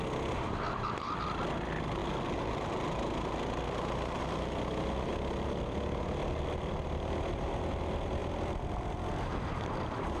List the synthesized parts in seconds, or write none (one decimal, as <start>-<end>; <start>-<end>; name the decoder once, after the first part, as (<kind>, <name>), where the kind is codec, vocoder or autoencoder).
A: none